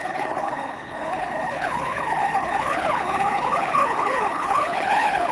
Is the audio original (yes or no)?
no